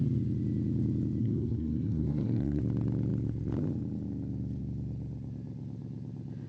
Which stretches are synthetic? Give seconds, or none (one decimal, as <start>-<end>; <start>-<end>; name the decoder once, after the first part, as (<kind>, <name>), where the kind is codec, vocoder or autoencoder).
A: 1.2-2.6 (codec, SNAC)